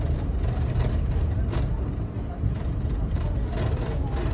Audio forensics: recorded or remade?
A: recorded